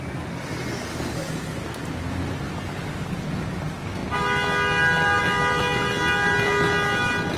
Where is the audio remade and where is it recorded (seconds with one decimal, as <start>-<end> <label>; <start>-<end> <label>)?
0.0-7.4 recorded